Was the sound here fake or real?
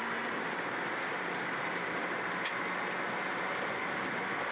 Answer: real